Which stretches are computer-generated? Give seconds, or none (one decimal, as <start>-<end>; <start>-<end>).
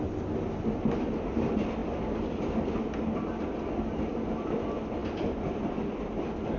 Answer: none